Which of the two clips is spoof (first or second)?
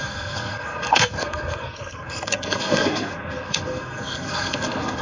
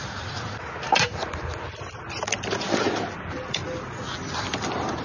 first